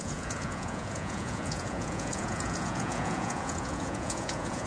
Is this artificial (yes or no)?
yes